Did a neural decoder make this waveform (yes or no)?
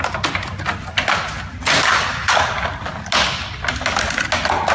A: no